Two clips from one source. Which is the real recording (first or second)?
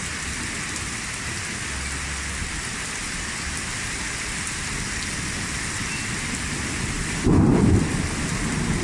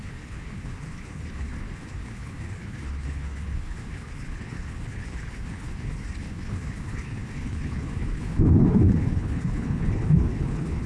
first